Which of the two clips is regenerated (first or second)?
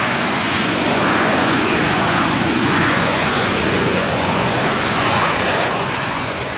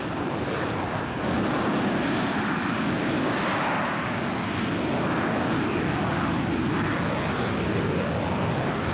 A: first